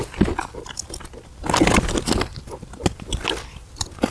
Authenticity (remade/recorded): recorded